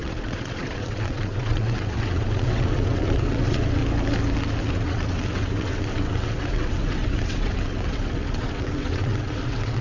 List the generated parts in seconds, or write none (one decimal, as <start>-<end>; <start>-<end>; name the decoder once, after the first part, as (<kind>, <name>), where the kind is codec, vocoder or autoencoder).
0.0-3.8 (vocoder, WaveNeXt); 4.7-9.8